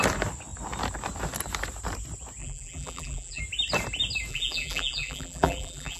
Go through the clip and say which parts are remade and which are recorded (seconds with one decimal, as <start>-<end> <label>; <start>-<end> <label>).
0.0-2.4 recorded; 2.4-3.4 remade; 3.4-4.3 recorded; 4.3-6.0 remade